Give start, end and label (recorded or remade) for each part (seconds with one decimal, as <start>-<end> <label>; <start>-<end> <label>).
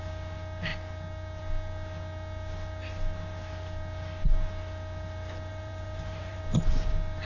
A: 0.0-5.5 recorded; 5.5-6.4 remade; 6.4-7.2 recorded